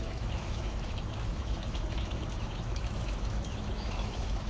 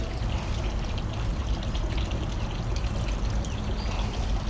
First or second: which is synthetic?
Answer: first